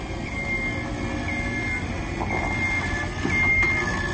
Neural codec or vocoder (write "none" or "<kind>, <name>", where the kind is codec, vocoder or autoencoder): none